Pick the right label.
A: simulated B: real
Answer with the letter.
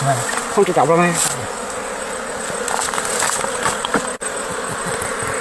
B